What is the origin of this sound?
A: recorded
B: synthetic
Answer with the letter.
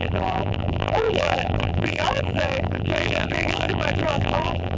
B